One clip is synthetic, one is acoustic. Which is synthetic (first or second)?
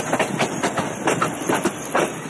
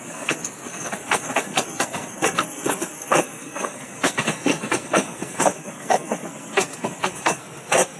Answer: second